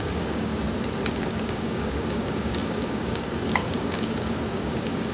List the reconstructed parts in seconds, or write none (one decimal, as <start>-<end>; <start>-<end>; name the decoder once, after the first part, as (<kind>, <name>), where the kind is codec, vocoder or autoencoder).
0.0-0.5 (codec, DAC); 1.1-5.1

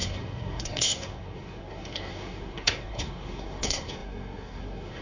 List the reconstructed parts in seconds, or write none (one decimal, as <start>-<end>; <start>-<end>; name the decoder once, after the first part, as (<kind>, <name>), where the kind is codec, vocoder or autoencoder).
0.0-5.0 (codec, SNAC)

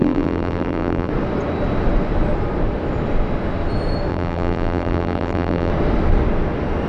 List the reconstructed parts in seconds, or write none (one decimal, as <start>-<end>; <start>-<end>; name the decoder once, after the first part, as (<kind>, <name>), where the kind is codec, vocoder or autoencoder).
0.0-1.1 (vocoder, BigVGAN v2); 4.1-5.7

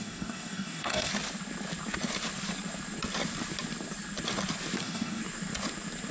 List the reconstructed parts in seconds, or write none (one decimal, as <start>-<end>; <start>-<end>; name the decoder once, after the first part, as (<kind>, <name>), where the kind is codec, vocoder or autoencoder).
0.0-1.1 (codec, DAC); 4.8-5.2

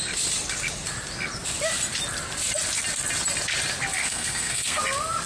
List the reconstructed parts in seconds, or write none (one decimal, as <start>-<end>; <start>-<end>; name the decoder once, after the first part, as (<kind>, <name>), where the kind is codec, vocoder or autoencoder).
4.0-4.8 (codec, SNAC)

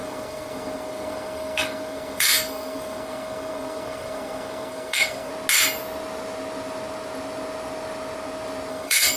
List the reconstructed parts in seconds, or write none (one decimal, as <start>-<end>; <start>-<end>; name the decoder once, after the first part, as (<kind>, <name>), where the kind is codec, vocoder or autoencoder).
0.0-5.3 (codec, SNAC); 8.7-9.2

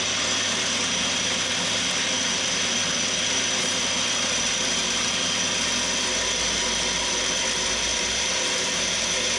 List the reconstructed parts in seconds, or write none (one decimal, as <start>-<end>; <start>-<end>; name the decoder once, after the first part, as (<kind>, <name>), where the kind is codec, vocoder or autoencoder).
7.9-8.7 (vocoder, BigVGAN v2)